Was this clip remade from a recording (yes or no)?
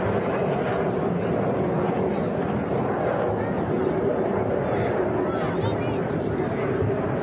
no